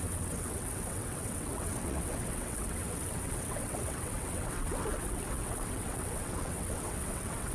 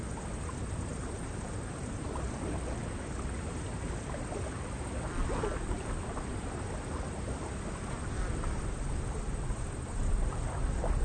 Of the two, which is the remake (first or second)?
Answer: first